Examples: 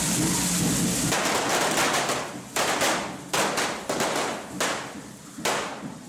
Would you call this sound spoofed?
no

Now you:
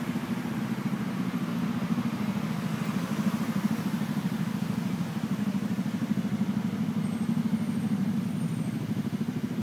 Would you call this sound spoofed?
no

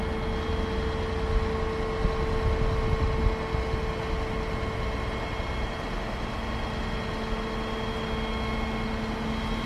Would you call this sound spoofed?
no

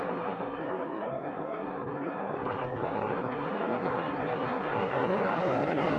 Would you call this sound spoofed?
yes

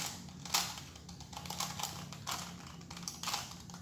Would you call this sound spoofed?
no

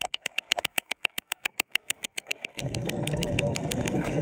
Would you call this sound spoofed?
yes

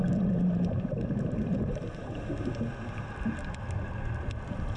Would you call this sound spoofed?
no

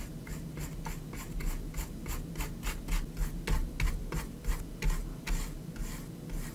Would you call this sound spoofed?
no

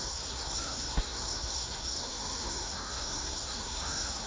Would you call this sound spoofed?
yes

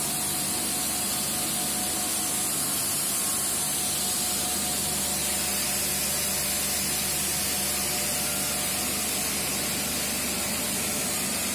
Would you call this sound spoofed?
no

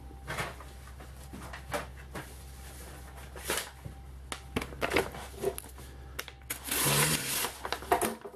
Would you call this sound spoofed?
no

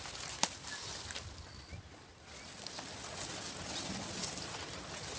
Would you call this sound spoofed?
no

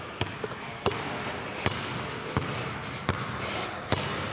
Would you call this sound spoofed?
no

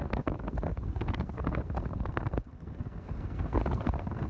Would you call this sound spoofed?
yes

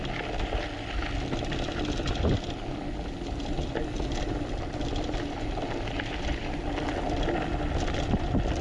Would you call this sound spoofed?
no